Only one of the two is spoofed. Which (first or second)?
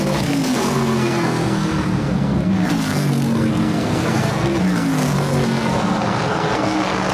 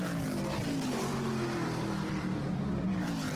first